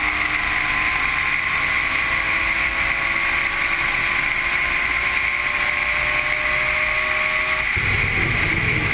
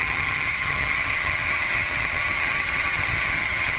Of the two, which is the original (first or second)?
first